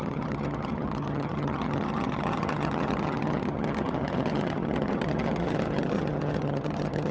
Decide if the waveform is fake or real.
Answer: fake